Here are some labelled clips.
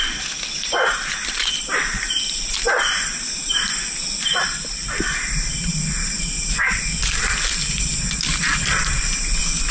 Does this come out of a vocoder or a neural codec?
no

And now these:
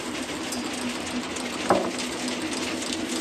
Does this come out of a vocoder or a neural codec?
no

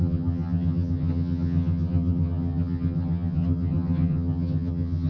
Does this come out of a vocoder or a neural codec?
yes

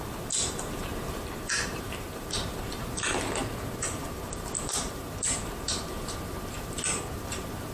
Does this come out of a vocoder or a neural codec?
yes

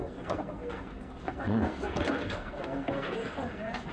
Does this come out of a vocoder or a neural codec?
yes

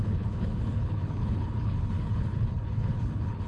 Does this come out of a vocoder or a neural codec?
yes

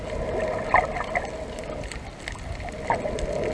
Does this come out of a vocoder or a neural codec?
no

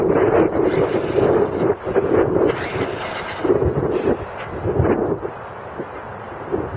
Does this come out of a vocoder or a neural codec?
no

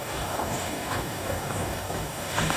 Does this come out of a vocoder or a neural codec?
yes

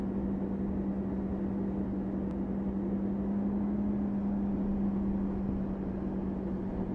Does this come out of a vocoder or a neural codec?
no